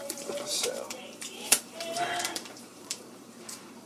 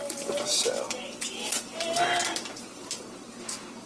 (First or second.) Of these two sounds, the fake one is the first